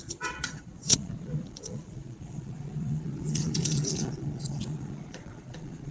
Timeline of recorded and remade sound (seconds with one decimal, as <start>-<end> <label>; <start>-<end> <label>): 0.0-5.9 remade